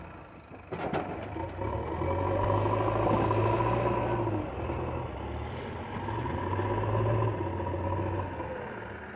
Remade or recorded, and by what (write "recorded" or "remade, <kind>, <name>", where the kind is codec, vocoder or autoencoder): recorded